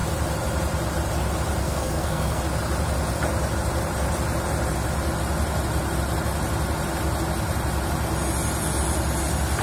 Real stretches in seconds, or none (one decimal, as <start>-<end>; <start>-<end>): 0.0-1.6; 2.4-9.6